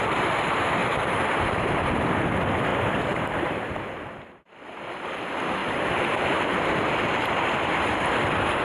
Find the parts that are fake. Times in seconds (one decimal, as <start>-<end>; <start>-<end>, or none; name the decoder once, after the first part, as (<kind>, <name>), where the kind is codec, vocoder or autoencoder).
0.8-2.3 (vocoder, BigVGAN v2); 2.7-3.6; 5.6-7.2